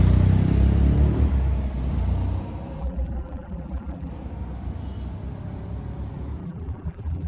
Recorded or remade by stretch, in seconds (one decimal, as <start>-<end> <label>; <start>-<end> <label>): 0.0-2.8 recorded; 2.8-4.1 remade; 4.1-6.4 recorded; 6.4-7.3 remade